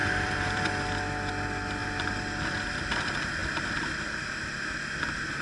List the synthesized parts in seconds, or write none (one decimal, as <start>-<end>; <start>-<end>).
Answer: 0.0-1.3